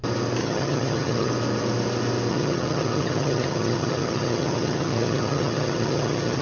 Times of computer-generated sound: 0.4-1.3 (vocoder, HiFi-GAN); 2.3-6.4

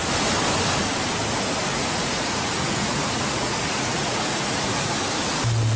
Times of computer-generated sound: 1.7-4.9 (vocoder, Vocos)

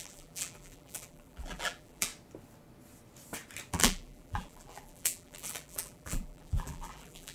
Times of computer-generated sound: 0.0-2.1 (vocoder, BigVGAN v2); 3.7-7.3

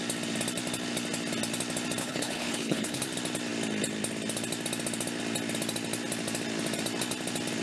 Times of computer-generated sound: 2.0-3.0 (codec, HILCodec)